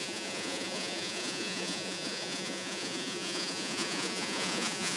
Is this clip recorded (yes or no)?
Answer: no